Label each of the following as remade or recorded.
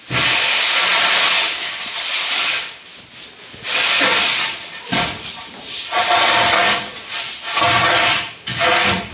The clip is recorded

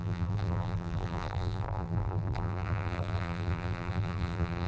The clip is remade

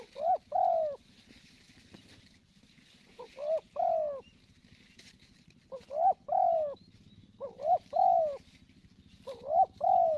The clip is recorded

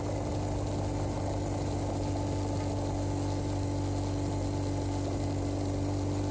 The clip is recorded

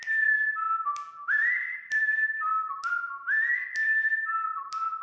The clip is remade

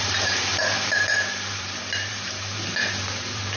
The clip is remade